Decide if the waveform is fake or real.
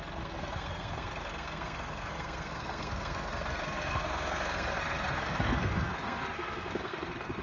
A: fake